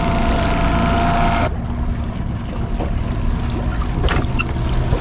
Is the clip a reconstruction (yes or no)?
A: no